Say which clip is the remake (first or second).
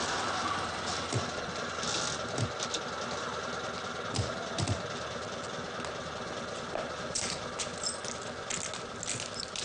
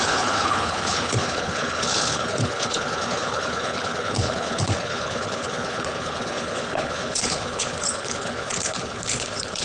second